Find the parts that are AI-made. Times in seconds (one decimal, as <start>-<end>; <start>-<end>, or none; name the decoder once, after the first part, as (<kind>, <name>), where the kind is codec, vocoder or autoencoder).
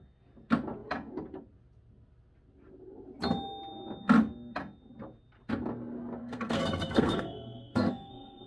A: 6.2-8.5 (codec, SNAC)